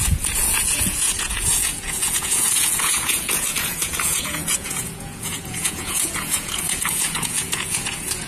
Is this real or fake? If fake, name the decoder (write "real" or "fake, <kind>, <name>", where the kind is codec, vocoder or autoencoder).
fake, vocoder, Vocos